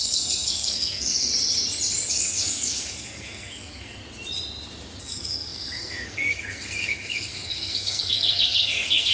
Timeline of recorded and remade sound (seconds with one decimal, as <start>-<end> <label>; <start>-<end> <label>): 0.0-1.3 remade; 1.3-2.1 recorded; 2.1-4.0 remade; 4.0-5.0 recorded; 5.0-9.1 remade